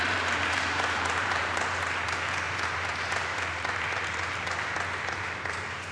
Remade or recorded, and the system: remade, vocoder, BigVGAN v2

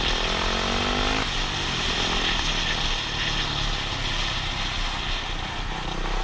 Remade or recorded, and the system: recorded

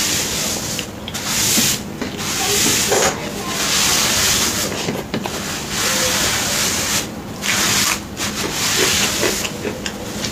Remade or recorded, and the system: recorded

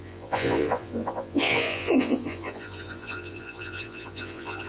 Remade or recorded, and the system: remade, vocoder, Vocos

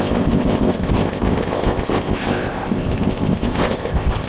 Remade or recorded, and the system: remade, codec, ZipCodec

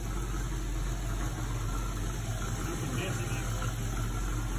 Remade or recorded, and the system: recorded